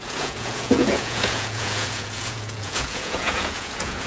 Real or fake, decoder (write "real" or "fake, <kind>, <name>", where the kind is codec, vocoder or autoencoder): fake, vocoder, Vocos